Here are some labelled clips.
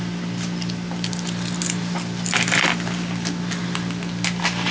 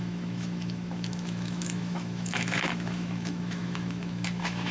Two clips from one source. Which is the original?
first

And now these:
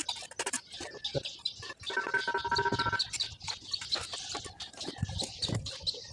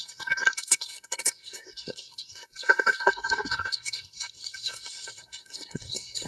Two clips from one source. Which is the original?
first